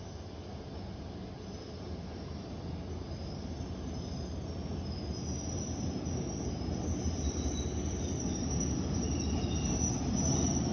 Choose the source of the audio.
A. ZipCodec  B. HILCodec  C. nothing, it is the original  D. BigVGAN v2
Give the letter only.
C